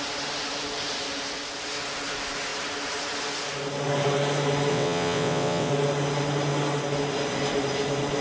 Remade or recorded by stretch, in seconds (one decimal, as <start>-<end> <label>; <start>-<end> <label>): 0.0-4.7 recorded; 4.7-5.7 remade; 5.7-8.2 recorded